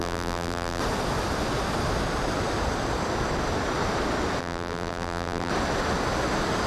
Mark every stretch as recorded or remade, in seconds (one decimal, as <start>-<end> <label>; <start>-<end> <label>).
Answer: 0.0-0.8 remade; 0.8-4.4 recorded; 4.4-5.5 remade; 5.5-6.7 recorded